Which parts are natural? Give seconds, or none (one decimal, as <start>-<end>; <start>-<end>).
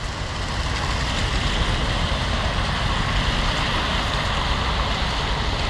0.0-5.7